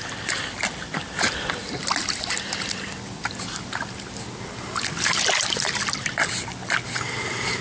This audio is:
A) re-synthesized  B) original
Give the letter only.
B